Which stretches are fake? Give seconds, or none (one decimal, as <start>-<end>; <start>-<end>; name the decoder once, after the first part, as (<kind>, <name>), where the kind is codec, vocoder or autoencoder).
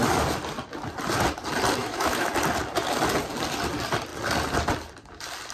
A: 1.8-2.3 (autoencoder, DAC-VAE)